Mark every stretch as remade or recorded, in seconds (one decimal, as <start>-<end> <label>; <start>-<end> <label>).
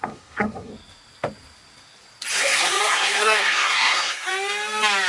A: 0.0-0.7 remade; 0.7-2.4 recorded; 2.4-4.3 remade; 4.3-5.1 recorded